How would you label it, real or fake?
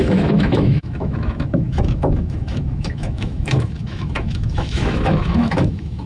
fake